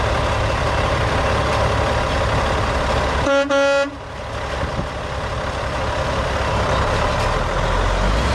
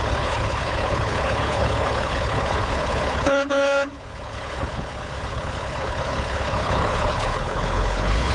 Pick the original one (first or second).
first